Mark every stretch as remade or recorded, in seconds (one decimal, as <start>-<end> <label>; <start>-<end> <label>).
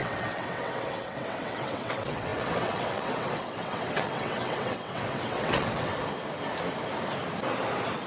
0.0-5.9 remade; 5.9-8.1 recorded